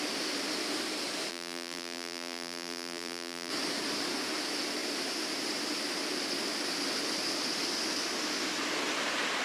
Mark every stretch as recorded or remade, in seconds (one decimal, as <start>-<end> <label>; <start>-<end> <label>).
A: 0.0-1.3 recorded; 1.3-3.5 remade; 3.5-9.4 recorded